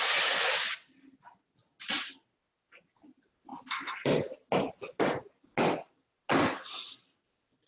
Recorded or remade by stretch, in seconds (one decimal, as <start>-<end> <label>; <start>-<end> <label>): 0.0-7.7 recorded